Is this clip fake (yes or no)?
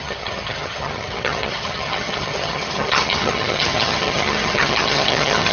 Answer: yes